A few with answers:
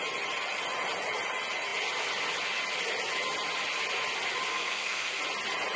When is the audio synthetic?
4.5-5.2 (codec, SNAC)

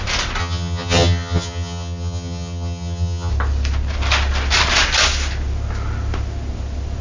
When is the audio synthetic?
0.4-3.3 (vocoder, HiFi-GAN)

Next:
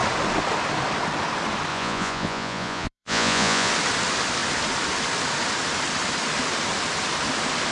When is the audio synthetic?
1.7-3.7 (vocoder, Vocos)

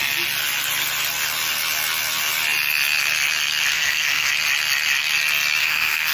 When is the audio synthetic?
3.7-4.3 (codec, SNAC); 5.6-6.1

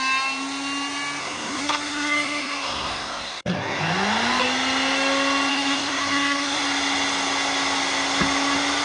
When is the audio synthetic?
1.2-3.8 (codec, SNAC); 5.5-6.6